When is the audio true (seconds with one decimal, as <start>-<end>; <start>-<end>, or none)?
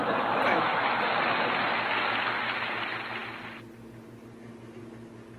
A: 0.0-5.4